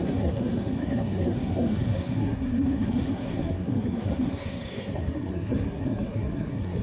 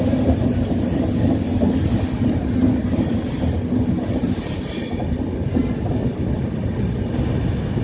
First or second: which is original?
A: second